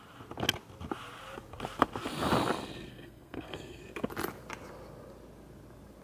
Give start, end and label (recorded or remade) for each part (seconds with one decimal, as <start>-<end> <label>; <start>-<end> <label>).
0.0-2.9 recorded; 2.9-3.8 remade; 3.8-6.0 recorded